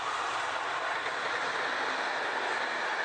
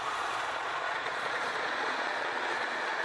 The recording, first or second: first